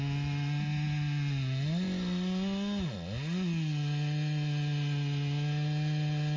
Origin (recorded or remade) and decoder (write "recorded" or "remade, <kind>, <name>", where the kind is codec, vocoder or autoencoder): recorded